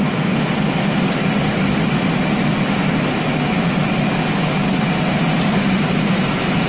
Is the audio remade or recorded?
recorded